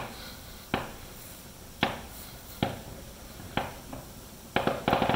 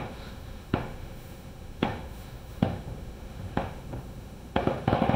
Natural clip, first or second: first